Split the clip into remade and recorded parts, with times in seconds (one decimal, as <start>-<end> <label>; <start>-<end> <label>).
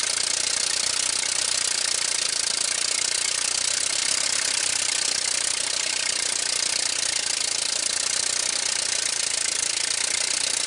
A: 0.0-10.7 recorded